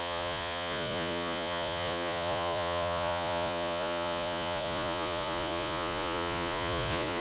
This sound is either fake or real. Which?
fake